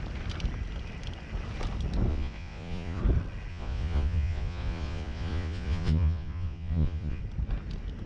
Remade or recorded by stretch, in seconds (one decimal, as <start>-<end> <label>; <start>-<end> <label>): 0.0-2.1 recorded; 2.1-3.0 remade; 3.0-3.5 recorded; 3.5-7.2 remade; 7.2-8.1 recorded